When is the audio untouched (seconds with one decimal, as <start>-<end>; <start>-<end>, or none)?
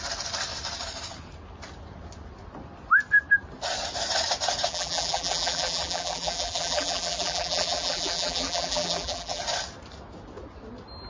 0.0-4.7; 9.4-11.1